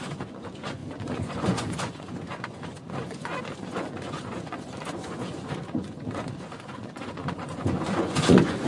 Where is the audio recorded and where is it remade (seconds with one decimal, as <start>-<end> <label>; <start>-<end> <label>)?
0.0-8.7 remade